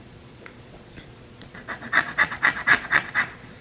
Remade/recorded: remade